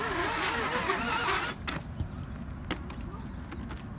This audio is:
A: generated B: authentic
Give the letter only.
B